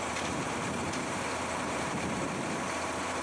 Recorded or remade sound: remade